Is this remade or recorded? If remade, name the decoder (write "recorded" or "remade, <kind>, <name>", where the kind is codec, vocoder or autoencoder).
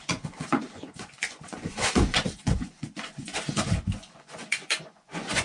remade, vocoder, Vocos